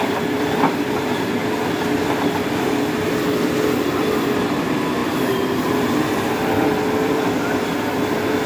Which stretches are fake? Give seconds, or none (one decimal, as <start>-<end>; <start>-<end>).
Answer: 0.0-1.4; 3.3-8.5